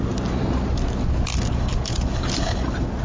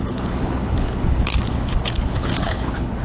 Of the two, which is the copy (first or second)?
second